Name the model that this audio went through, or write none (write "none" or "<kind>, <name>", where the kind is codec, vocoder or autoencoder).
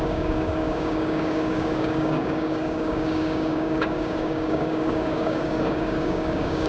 codec, DAC